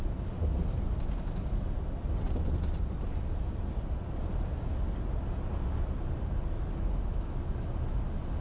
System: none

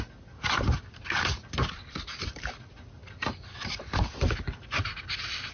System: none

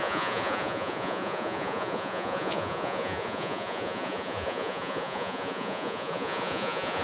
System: vocoder, Vocos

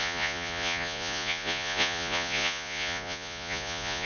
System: vocoder, Vocos